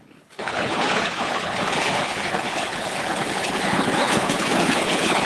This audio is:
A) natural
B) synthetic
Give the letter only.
B